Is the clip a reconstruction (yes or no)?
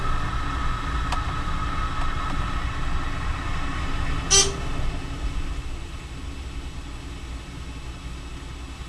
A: no